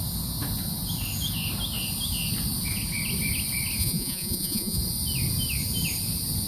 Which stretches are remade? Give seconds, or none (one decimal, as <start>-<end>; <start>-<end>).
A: 3.8-4.8